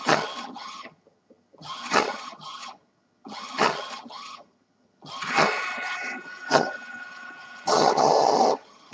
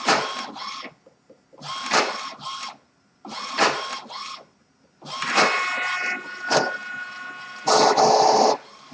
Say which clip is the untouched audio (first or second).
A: second